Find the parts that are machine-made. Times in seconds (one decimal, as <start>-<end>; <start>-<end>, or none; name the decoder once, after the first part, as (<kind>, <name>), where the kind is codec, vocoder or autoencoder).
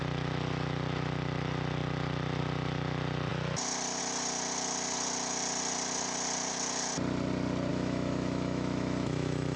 7.7-9.6 (autoencoder, DAC-VAE)